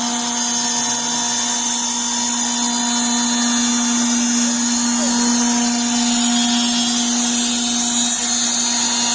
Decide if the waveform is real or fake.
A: real